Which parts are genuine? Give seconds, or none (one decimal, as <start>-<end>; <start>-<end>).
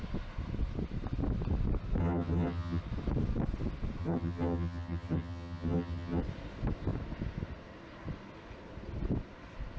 0.0-2.0; 2.8-4.0; 6.2-9.8